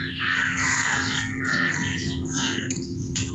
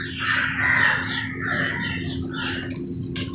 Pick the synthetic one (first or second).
first